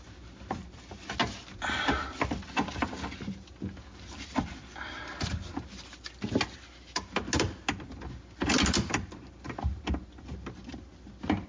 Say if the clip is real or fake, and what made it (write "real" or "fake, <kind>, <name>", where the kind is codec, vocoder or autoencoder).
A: real